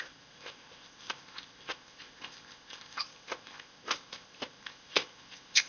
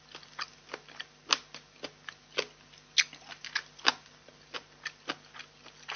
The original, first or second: second